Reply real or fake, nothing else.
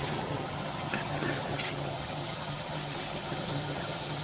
fake